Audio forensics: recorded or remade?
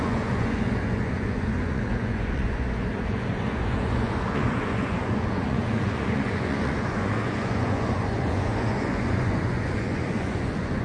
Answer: remade